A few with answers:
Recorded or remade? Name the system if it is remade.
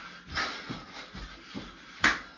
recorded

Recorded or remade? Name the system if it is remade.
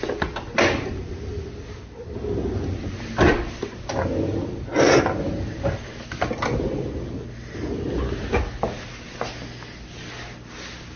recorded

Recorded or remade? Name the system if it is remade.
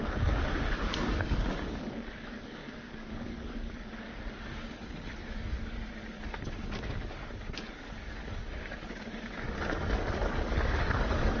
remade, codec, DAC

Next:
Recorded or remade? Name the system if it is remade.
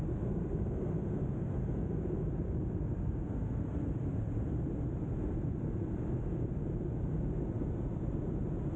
recorded